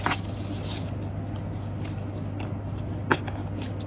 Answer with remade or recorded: recorded